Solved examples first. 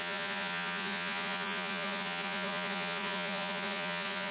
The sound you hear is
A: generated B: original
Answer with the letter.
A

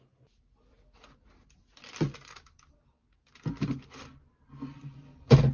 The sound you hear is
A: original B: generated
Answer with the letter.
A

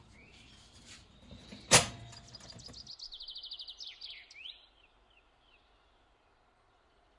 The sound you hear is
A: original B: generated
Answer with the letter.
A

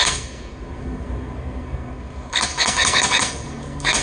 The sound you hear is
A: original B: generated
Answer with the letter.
B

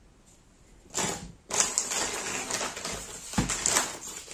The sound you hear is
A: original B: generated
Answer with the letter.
A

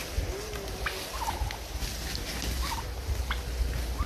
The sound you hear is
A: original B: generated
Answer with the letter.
A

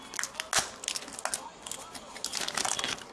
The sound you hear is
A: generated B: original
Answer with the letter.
B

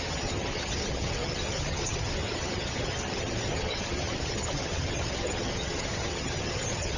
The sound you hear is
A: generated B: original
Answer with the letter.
A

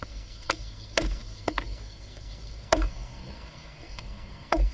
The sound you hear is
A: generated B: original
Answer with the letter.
A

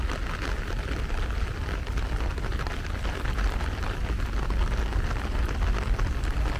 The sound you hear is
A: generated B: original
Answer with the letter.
B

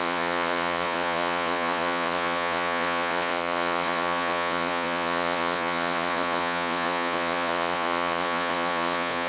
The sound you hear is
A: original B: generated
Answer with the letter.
B